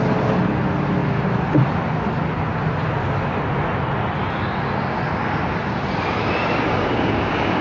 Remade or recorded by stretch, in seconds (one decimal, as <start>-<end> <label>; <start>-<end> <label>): 0.0-6.7 recorded; 6.7-7.6 remade